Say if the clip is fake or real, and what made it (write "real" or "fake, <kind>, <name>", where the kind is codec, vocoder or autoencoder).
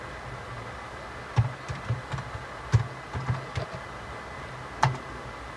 real